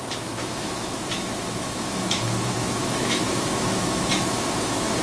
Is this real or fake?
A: fake